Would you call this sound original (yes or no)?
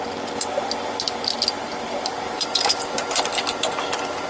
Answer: yes